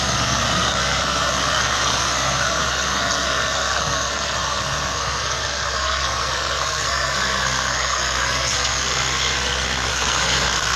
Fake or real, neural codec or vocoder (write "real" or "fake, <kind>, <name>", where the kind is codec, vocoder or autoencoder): fake, codec, SNAC